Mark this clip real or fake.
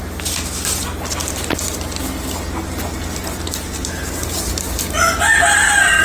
real